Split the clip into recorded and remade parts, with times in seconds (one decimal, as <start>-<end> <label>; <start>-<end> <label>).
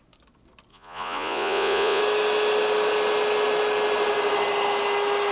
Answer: 0.0-0.7 recorded; 0.7-2.0 remade; 2.0-5.3 recorded